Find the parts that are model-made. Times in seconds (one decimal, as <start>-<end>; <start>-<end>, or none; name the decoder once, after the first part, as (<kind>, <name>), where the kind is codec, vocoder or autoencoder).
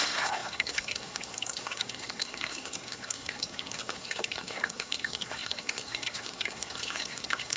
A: 0.0-7.6 (codec, SNAC)